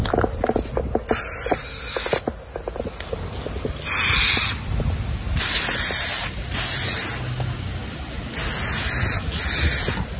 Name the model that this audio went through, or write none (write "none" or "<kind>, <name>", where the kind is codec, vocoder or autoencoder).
none